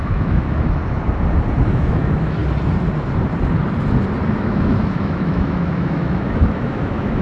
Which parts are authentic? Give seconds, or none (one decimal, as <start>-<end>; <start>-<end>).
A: 0.8-1.7; 2.4-4.3